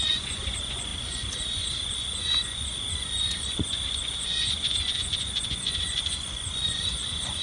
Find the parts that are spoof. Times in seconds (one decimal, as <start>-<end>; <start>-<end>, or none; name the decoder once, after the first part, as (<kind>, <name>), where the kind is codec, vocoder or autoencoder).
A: 0.0-7.4 (vocoder, Vocos)